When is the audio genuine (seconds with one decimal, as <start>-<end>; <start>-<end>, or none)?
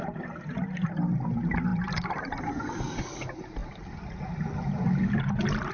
0.0-5.7